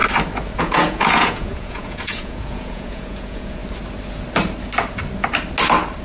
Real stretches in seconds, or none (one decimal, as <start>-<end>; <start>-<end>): 0.0-0.6; 3.6-6.0